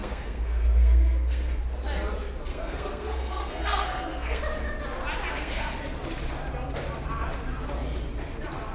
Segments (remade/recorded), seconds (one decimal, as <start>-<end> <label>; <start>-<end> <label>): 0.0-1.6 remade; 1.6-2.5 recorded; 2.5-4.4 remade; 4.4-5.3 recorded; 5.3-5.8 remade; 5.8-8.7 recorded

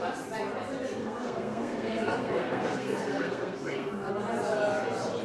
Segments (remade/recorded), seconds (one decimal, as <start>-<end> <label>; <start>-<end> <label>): 0.0-1.0 recorded; 1.0-4.1 remade; 4.1-5.2 recorded

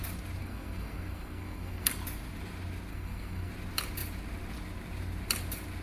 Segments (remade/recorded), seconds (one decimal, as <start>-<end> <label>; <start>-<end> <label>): 0.0-0.4 recorded; 0.4-1.9 remade; 1.9-2.9 recorded; 2.9-3.5 remade; 3.5-5.8 recorded